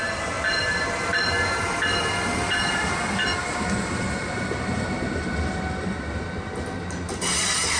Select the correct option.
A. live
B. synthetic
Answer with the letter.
A